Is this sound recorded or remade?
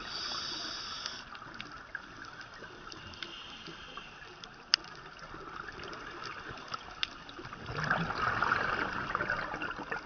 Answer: recorded